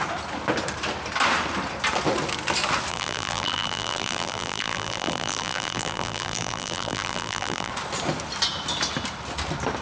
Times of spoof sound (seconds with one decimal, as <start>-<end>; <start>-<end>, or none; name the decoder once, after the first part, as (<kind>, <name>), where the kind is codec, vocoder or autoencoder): 2.9-7.7 (vocoder, BigVGAN v2)